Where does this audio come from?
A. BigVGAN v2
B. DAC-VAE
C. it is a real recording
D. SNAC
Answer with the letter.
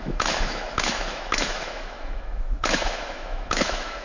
B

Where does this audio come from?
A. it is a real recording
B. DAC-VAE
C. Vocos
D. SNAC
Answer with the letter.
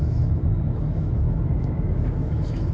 B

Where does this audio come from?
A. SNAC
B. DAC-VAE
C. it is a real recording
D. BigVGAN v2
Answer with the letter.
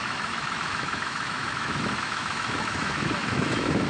B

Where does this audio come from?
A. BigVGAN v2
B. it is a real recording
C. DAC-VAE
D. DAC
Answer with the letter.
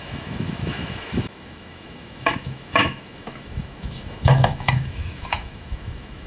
C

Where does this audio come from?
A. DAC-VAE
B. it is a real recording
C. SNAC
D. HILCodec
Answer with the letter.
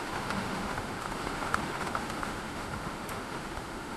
A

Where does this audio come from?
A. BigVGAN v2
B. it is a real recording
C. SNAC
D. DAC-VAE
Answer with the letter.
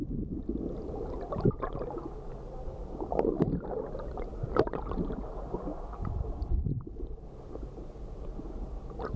B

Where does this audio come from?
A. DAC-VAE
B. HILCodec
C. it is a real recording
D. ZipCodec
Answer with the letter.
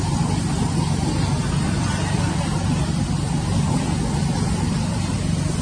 C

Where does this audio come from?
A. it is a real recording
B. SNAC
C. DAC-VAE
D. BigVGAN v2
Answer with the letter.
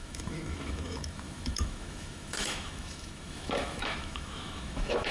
C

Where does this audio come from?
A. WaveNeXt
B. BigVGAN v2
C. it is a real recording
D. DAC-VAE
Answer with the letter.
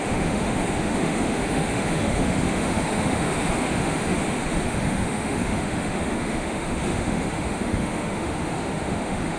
D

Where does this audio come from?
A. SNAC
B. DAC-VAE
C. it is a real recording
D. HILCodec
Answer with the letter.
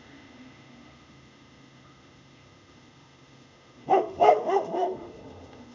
B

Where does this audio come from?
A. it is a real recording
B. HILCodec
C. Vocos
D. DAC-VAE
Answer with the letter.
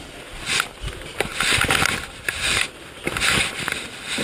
A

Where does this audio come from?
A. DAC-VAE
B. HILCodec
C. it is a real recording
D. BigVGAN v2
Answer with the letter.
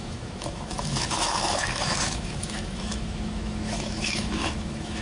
A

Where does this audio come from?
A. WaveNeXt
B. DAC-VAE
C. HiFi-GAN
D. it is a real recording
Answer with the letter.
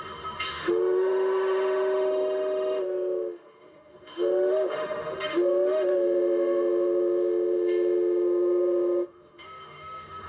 B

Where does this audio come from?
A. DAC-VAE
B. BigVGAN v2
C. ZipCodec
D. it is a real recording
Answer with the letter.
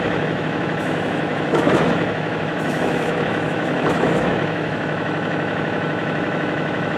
A